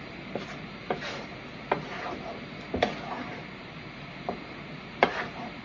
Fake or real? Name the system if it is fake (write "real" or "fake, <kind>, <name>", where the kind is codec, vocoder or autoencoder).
fake, vocoder, BigVGAN v2